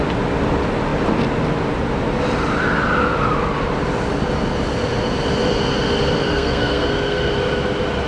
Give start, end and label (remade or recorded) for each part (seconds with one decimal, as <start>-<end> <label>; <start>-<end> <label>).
0.0-6.3 recorded; 6.3-7.3 remade; 7.3-8.1 recorded